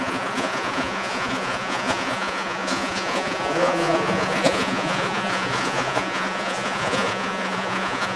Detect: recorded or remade remade